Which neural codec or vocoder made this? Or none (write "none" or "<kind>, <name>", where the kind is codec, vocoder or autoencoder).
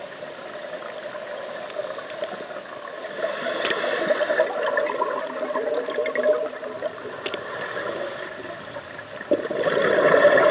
none